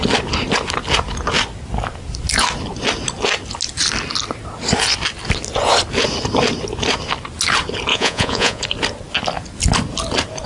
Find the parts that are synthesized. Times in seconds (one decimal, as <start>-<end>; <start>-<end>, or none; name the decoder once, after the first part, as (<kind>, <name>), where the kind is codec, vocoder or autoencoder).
7.9-8.6 (vocoder, Vocos)